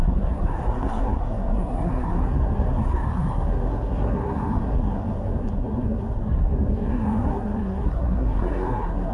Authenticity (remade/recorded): remade